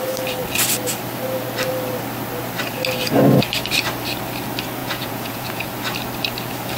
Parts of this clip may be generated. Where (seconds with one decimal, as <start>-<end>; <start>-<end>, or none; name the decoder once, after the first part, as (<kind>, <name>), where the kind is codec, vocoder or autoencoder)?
4.8-5.7 (vocoder, Vocos)